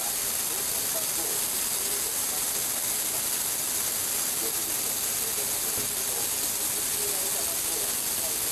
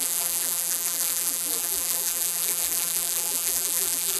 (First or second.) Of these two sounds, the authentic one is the first